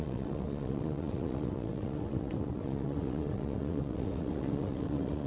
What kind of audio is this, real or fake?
fake